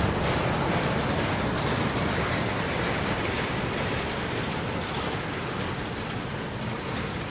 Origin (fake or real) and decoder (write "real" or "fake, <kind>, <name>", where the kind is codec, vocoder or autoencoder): real